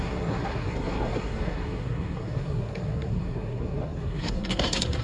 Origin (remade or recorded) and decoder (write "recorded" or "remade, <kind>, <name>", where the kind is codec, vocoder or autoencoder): remade, codec, SNAC